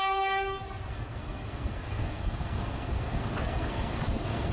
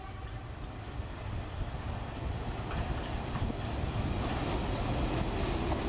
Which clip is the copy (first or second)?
first